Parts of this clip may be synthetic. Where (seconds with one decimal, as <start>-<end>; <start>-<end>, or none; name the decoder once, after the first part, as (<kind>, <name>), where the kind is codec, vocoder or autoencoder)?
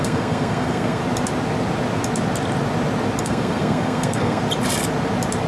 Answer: 0.0-1.0 (codec, SNAC); 3.2-4.4